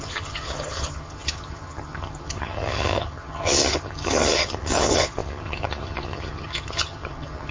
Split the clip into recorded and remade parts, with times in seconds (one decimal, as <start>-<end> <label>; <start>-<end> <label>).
0.0-7.5 remade